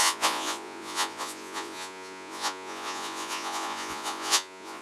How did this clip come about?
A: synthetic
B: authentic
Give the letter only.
A